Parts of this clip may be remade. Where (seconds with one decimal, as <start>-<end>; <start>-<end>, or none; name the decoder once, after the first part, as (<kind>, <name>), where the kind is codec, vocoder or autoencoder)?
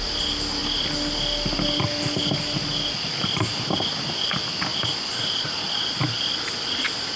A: none